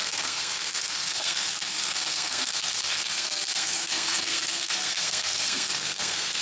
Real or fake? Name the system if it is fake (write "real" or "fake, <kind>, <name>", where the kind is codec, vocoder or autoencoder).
fake, codec, SNAC